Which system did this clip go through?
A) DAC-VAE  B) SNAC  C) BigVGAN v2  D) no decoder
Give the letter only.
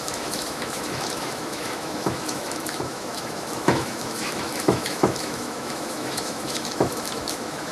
A